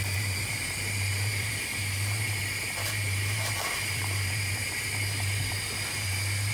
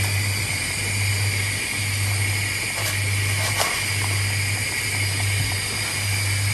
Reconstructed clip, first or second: first